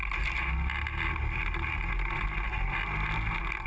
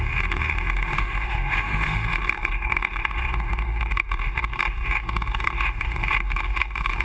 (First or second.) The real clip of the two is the first